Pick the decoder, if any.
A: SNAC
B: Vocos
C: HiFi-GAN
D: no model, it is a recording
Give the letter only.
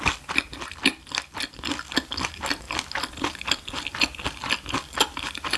D